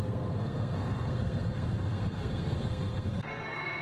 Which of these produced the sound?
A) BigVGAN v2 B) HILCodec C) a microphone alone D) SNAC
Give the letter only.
D